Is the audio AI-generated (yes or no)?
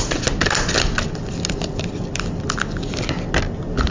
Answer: no